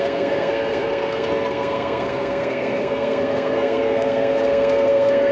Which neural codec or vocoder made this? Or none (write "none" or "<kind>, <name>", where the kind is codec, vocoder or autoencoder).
codec, SNAC